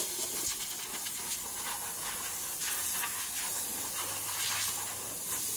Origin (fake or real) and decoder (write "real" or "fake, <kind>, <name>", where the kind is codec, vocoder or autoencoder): real